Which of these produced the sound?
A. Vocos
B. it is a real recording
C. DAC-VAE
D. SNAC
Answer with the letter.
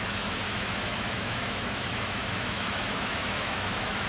C